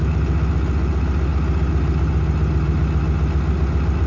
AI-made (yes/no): no